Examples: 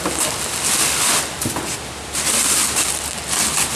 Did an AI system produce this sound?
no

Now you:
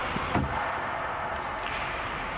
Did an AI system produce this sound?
no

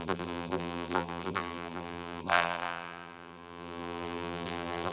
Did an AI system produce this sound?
yes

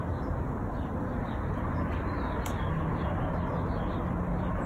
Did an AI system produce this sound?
no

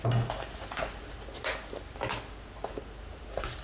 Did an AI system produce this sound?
no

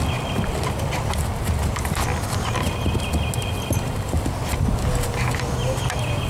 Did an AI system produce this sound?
no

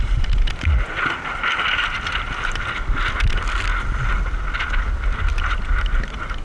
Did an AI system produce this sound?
no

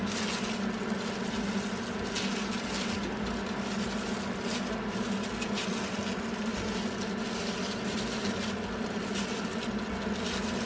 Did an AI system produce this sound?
no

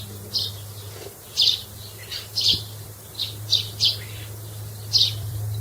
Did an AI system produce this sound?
yes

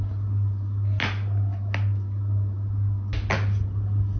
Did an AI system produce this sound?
no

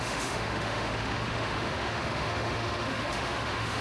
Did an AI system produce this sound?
yes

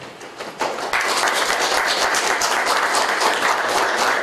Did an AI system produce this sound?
no